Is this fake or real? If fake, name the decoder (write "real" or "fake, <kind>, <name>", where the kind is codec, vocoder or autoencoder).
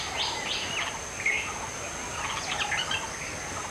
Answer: real